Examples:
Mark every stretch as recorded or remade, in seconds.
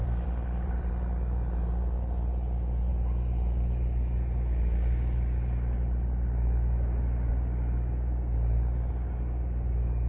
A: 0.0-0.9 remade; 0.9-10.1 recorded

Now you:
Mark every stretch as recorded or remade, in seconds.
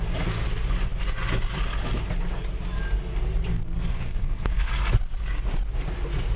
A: 0.0-3.5 recorded; 3.5-4.7 remade; 4.7-6.4 recorded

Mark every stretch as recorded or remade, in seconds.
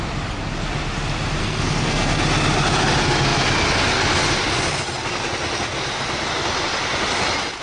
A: 0.0-1.4 recorded; 1.4-2.2 remade; 2.2-7.6 recorded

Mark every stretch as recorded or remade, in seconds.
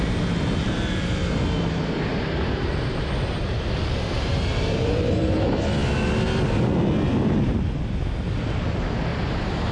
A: 0.0-2.1 recorded; 2.1-5.6 remade; 5.6-9.7 recorded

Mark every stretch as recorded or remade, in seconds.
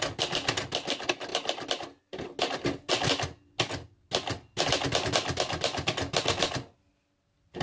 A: 0.0-7.6 recorded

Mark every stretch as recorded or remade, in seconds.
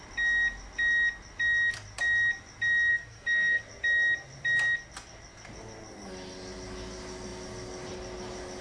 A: 0.0-2.9 recorded; 2.9-3.6 remade; 3.6-8.6 recorded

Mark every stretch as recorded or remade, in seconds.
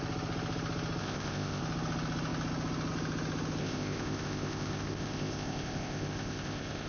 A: 0.0-1.0 recorded; 1.0-1.6 remade; 1.6-3.6 recorded; 3.6-6.9 remade